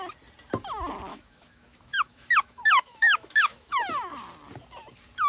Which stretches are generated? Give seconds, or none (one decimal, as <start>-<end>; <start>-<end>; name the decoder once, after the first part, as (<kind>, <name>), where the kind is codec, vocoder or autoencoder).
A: 1.1-4.1 (autoencoder, DAC-VAE)

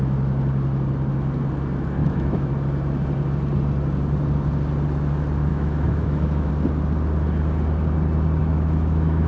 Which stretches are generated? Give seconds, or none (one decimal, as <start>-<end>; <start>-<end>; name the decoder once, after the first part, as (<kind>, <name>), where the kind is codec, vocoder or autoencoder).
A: 2.0-2.5 (autoencoder, DAC-VAE); 5.5-6.5; 8.4-9.3